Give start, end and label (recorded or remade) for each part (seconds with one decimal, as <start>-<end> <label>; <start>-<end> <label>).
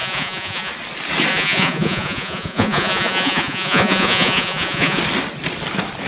0.0-0.7 remade; 0.7-1.3 recorded; 1.3-5.0 remade; 5.0-6.1 recorded